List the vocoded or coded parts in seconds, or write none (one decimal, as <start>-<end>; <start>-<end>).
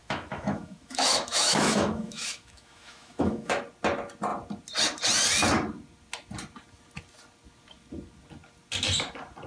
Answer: 0.0-3.6